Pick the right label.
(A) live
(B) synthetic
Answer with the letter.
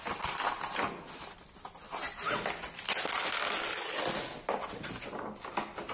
A